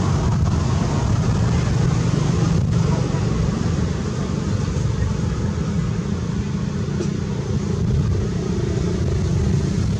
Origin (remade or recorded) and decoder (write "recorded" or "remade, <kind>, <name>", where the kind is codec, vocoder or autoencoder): recorded